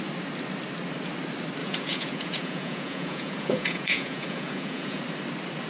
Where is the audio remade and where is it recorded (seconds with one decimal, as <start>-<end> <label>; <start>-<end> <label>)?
0.0-1.6 recorded; 1.6-5.0 remade; 5.0-5.7 recorded